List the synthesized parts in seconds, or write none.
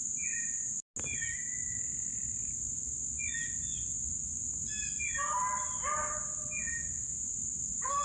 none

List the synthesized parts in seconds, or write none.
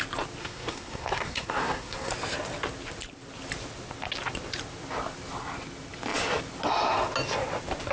0.4-2.1 (codec, SNAC)